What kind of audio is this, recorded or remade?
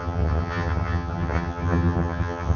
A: remade